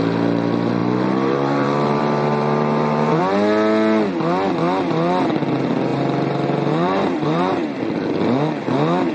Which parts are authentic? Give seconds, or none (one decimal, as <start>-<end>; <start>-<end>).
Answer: 0.0-0.8; 3.2-5.9; 7.8-9.1